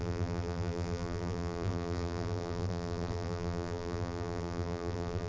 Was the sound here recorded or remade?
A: remade